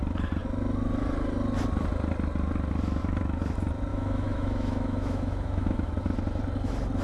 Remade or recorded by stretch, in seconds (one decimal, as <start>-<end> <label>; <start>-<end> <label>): 0.0-3.9 recorded; 3.9-5.9 remade; 5.9-7.0 recorded